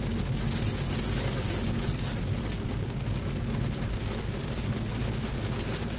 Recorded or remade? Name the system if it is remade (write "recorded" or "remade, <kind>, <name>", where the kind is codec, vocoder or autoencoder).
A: recorded